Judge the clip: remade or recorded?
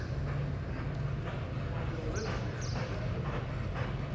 recorded